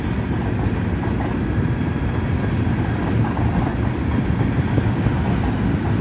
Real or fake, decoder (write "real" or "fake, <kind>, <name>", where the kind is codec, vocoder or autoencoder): real